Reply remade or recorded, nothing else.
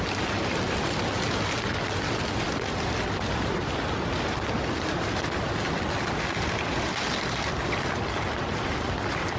recorded